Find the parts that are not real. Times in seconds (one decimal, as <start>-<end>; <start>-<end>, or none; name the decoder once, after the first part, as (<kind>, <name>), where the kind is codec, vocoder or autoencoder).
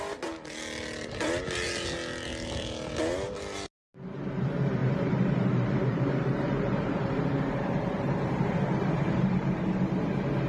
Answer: 4.8-10.0 (vocoder, BigVGAN v2)